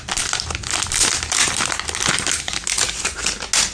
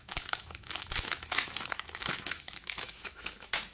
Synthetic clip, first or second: second